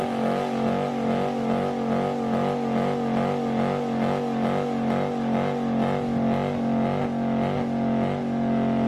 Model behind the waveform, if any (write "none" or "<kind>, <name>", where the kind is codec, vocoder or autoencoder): none